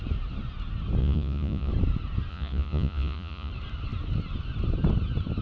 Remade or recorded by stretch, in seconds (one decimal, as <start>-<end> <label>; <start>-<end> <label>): 0.0-1.0 recorded; 1.0-1.7 remade; 1.7-2.3 recorded; 2.3-3.5 remade; 3.5-5.4 recorded